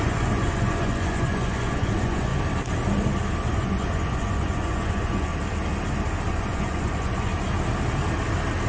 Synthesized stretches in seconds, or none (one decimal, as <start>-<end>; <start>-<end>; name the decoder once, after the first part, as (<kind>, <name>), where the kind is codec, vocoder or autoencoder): 0.0-2.3 (vocoder, Vocos); 3.5-5.3; 6.3-7.3